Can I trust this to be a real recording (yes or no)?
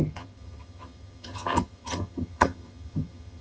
no